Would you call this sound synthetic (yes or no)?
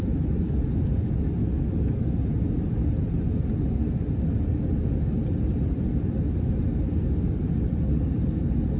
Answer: no